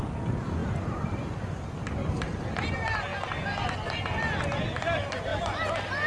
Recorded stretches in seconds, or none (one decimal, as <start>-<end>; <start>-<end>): 0.0-0.6; 1.3-2.0; 2.7-6.1